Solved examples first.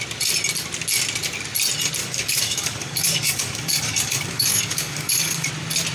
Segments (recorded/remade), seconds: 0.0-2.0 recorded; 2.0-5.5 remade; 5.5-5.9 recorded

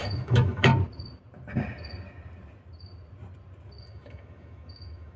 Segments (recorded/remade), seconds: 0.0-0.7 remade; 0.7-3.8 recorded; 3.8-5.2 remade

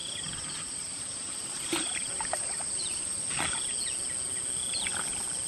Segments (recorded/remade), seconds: 0.0-3.3 remade; 3.3-5.5 recorded